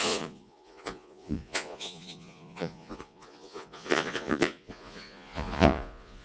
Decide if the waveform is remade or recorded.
remade